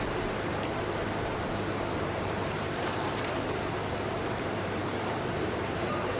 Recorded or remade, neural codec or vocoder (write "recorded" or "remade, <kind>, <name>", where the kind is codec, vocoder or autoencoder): remade, vocoder, BigVGAN v2